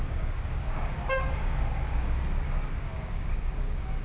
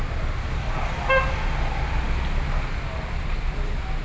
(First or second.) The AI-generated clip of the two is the first